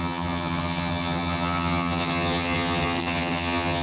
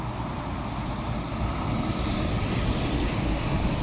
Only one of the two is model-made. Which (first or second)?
first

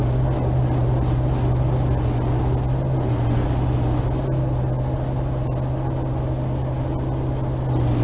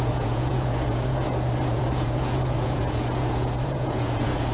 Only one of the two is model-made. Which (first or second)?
second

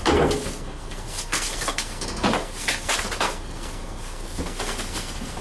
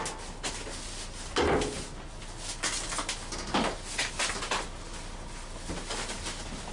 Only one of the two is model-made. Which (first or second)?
first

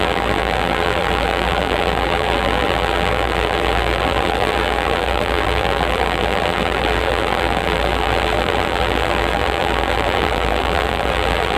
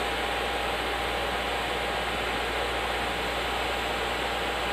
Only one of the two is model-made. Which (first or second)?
first